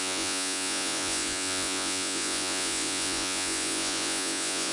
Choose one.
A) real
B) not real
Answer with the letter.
B